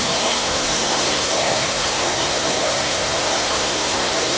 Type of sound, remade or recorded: remade